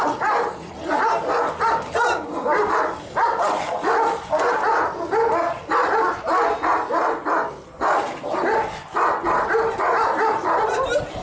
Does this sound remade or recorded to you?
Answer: recorded